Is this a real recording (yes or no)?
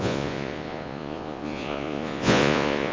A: no